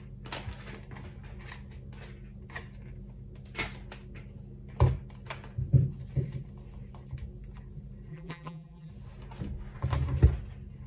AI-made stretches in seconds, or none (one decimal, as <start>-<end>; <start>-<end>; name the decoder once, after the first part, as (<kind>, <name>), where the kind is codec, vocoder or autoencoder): 8.1-8.9 (vocoder, BigVGAN v2)